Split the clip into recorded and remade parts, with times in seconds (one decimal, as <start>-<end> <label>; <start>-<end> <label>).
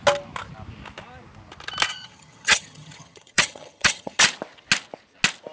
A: 0.0-1.9 recorded; 1.9-4.2 remade; 4.2-5.5 recorded